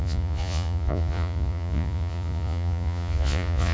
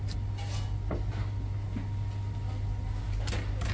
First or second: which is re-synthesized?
first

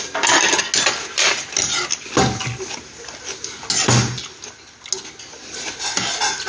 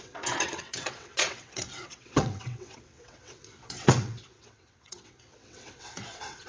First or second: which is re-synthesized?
second